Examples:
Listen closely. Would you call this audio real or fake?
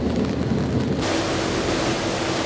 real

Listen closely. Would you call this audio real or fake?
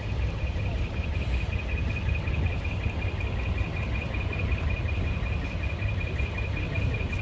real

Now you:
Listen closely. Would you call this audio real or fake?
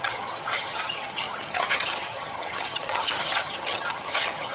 fake